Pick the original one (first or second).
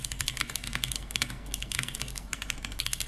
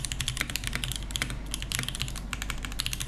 second